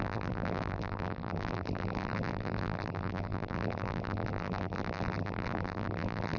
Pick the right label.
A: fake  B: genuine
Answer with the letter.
A